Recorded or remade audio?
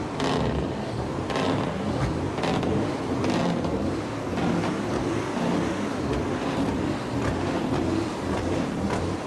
recorded